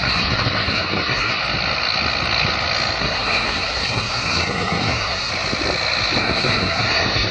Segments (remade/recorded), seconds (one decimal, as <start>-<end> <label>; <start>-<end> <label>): 0.0-1.4 remade; 1.4-3.0 recorded; 3.0-5.3 remade; 5.3-6.2 recorded; 6.2-7.3 remade